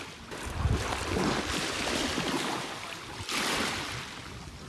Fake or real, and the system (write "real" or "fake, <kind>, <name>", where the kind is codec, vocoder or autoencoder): real